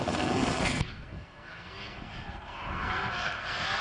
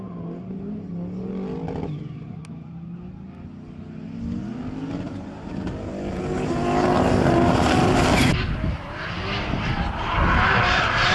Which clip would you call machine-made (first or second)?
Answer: first